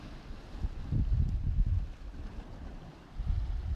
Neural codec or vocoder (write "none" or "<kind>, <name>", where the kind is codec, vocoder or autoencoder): none